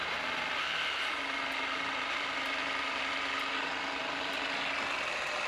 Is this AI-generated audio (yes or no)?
no